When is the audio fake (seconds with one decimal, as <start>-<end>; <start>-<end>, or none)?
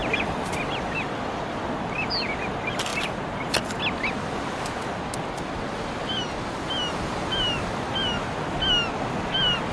none